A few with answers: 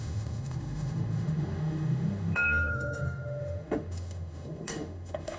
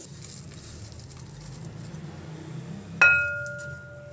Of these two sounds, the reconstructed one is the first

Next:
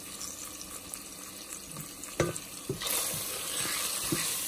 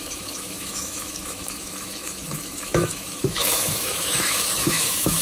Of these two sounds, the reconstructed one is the second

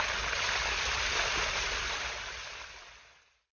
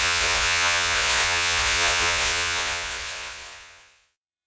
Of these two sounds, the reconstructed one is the second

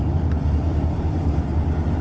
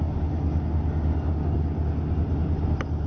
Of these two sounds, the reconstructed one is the first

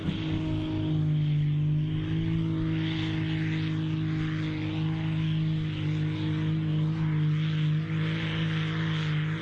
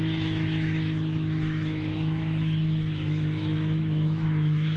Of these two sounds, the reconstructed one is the second